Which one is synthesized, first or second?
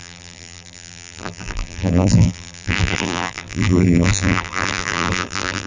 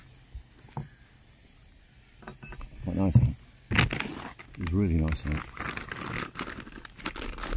first